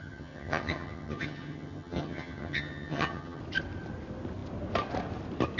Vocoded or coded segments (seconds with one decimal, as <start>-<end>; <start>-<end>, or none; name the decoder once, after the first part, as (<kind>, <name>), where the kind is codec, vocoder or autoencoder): 0.0-3.4 (vocoder, HiFi-GAN)